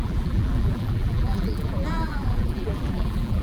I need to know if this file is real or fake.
fake